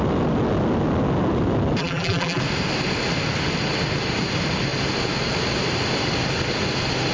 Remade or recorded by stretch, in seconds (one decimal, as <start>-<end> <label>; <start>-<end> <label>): 0.0-1.8 recorded; 1.8-2.4 remade; 2.4-7.1 recorded